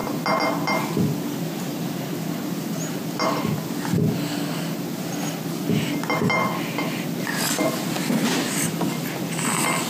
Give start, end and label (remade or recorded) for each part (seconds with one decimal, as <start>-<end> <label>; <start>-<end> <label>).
0.0-9.9 recorded